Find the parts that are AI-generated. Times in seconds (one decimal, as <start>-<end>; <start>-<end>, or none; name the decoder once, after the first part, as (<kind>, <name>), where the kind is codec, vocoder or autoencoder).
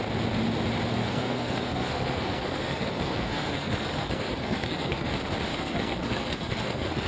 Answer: 1.0-5.1 (codec, SNAC); 5.5-7.1